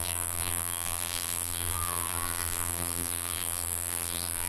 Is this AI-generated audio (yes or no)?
yes